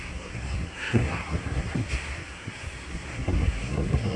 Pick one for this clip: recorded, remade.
remade